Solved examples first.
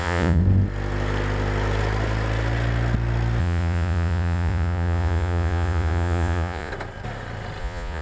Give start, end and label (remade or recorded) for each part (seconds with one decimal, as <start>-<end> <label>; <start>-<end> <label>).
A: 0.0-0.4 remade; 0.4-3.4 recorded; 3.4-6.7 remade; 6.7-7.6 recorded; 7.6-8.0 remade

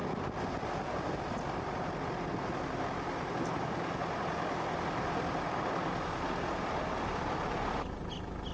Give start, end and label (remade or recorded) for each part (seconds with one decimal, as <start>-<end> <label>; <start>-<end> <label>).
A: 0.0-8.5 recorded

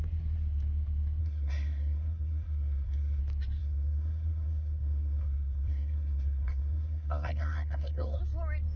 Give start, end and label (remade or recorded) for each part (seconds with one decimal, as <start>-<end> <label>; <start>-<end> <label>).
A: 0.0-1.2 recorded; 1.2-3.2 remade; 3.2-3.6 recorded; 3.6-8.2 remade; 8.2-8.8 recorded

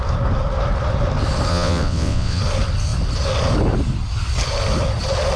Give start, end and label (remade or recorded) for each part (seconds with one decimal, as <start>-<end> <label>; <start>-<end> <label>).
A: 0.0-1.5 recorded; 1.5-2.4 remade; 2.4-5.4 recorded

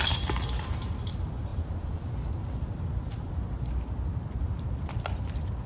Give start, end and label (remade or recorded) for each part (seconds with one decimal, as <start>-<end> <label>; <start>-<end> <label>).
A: 0.0-5.7 recorded